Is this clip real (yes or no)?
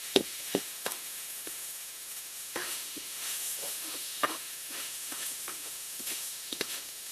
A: no